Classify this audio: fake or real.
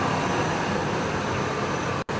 real